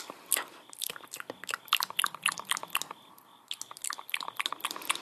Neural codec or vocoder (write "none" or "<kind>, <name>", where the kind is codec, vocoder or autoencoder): none